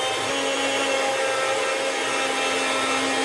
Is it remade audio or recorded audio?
recorded